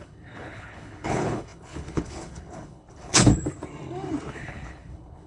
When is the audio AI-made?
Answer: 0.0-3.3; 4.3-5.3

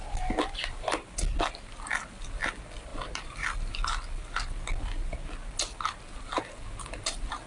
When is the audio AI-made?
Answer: none

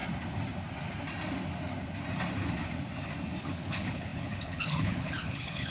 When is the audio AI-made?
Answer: 3.4-5.7

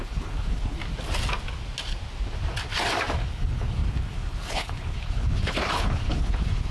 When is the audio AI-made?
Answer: 0.0-0.8; 3.3-6.7

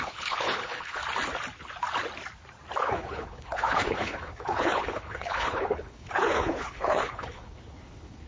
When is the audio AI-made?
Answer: 0.0-1.0; 2.8-8.3

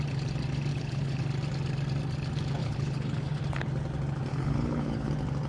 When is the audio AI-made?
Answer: 0.7-1.2; 2.6-3.4; 4.3-5.1

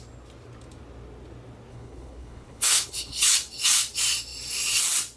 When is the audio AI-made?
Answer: 1.7-3.3